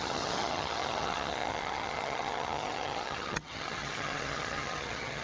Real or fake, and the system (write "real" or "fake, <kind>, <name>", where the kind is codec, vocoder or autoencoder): fake, vocoder, HiFi-GAN